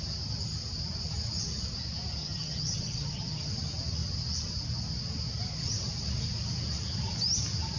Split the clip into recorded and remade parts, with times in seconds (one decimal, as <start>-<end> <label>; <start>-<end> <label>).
0.0-2.2 recorded; 2.2-3.5 remade; 3.5-7.8 recorded